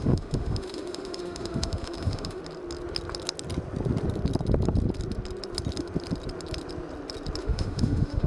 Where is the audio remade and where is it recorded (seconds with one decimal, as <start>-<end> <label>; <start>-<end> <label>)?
0.0-2.4 remade; 2.4-7.4 recorded; 7.4-8.3 remade

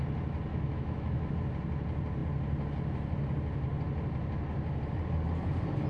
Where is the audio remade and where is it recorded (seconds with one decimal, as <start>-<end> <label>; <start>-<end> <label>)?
0.0-0.5 recorded; 0.5-1.3 remade; 1.3-5.9 recorded

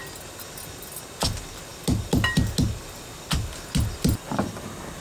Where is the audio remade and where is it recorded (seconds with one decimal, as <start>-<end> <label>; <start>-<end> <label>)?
0.0-5.0 recorded

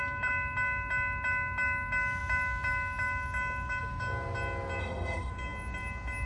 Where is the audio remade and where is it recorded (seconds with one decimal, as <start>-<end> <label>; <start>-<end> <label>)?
0.0-4.8 recorded; 4.8-5.3 remade; 5.3-6.3 recorded

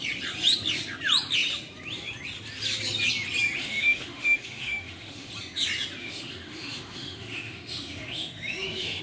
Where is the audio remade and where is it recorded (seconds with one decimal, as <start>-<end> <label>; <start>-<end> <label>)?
0.0-3.6 recorded; 3.6-5.3 remade; 5.3-6.0 recorded; 6.0-9.0 remade